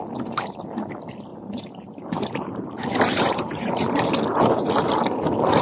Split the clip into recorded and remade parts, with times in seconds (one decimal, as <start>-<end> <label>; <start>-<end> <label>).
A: 0.0-1.3 recorded; 1.3-4.7 remade; 4.7-5.6 recorded